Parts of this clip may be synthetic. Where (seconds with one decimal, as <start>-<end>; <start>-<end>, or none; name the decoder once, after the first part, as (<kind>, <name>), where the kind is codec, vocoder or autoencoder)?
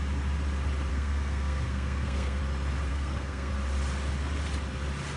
0.9-2.4 (codec, SNAC); 2.9-3.5